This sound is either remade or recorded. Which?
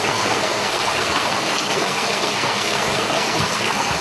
remade